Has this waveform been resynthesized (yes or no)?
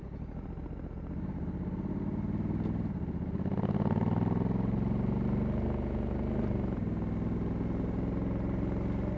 no